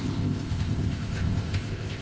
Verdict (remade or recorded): remade